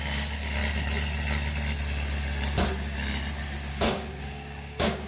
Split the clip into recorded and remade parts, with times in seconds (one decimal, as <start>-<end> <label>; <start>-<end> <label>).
0.0-0.6 remade; 0.6-3.7 recorded; 3.7-5.1 remade

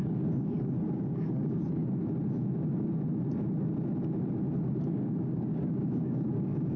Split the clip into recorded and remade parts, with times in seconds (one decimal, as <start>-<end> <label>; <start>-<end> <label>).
0.0-1.8 remade; 1.8-4.9 recorded; 4.9-6.8 remade

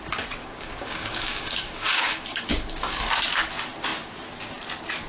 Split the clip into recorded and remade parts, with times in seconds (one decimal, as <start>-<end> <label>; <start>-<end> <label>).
0.0-0.4 recorded; 0.4-2.9 remade; 2.9-5.1 recorded

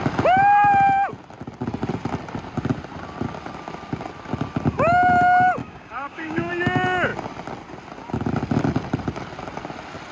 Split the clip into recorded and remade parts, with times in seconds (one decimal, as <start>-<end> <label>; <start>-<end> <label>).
0.0-5.6 recorded; 5.6-6.5 remade; 6.5-10.1 recorded

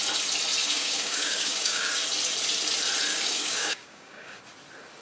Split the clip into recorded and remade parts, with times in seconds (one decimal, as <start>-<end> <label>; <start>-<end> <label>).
0.0-0.6 recorded; 0.6-2.0 remade; 2.0-3.1 recorded; 3.1-4.4 remade; 4.4-5.0 recorded

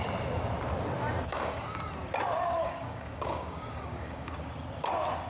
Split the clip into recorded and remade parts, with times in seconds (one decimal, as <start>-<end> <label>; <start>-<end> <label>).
0.0-1.3 recorded; 1.3-1.8 remade; 1.8-2.6 recorded; 2.6-4.5 remade; 4.5-5.3 recorded